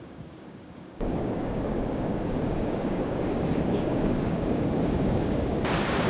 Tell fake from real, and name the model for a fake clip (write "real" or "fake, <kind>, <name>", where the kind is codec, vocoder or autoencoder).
fake, codec, DAC